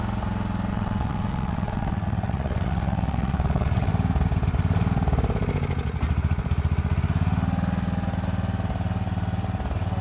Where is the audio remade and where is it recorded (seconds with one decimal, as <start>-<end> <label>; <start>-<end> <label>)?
0.0-0.7 recorded; 0.7-3.9 remade; 3.9-10.0 recorded